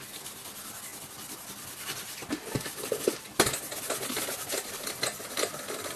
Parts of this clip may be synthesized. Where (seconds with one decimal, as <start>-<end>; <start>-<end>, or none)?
none